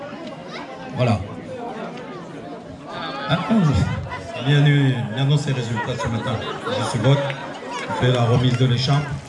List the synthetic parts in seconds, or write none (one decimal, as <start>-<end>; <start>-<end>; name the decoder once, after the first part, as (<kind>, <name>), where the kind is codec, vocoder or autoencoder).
7.4-7.9 (vocoder, BigVGAN v2)